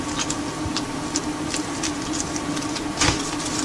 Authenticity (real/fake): real